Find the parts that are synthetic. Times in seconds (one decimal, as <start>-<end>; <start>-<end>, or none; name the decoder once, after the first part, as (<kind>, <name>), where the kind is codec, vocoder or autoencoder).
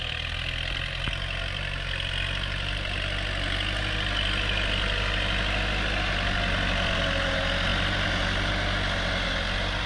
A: none